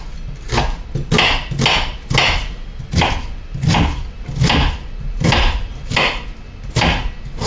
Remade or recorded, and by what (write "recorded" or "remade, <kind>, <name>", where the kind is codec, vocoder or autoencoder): recorded